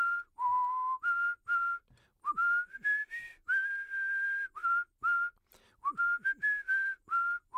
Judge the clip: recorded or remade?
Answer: recorded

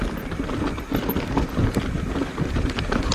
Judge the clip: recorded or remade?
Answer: recorded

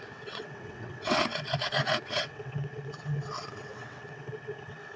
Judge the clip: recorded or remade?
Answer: remade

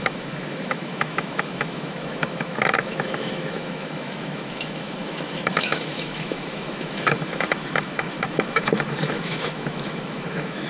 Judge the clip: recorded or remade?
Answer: remade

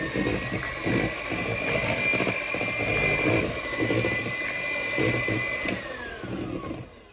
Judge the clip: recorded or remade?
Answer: recorded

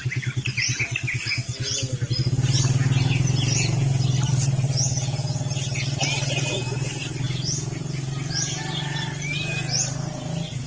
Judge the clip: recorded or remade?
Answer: recorded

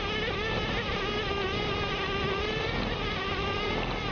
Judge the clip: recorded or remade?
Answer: recorded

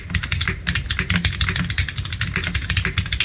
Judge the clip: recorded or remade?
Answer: recorded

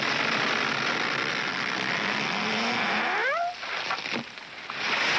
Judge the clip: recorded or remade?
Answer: recorded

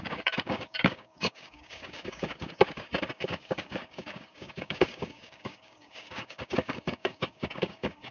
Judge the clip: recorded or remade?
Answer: remade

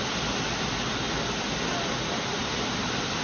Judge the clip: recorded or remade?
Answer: recorded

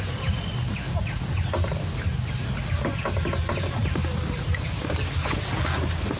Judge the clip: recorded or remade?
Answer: recorded